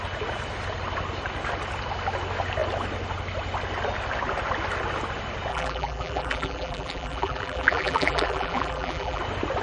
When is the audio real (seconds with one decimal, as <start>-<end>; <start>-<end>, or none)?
0.0-5.5; 9.2-9.6